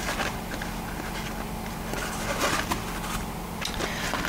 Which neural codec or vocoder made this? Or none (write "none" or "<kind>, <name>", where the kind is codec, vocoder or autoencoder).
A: none